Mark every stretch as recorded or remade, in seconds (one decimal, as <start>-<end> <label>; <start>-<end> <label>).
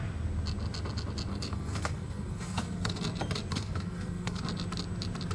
0.0-1.3 recorded; 1.3-3.0 remade; 3.0-3.5 recorded; 3.5-4.4 remade; 4.4-5.3 recorded